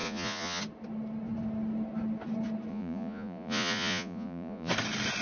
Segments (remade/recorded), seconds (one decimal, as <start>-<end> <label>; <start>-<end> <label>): 0.0-0.6 remade; 0.6-2.7 recorded; 2.7-4.7 remade; 4.7-5.2 recorded